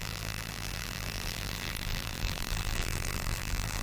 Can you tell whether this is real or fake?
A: fake